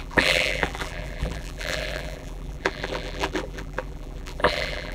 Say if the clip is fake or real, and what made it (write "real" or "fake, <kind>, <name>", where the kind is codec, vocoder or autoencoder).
fake, vocoder, BigVGAN v2